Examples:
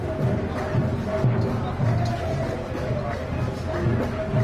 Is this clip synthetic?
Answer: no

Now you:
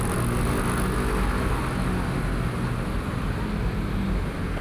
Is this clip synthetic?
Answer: no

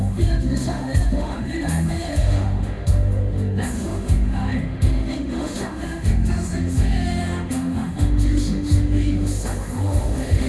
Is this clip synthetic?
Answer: yes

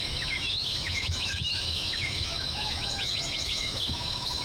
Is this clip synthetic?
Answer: yes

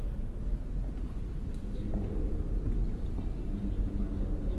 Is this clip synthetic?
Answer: no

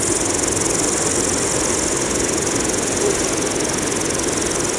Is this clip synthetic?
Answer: no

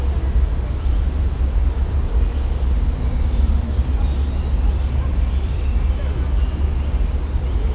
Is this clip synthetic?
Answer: no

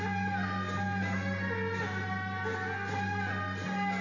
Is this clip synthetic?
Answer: no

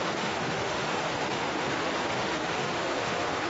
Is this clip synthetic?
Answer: yes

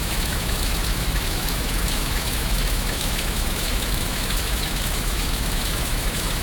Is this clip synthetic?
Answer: yes